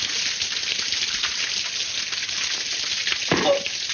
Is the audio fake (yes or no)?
no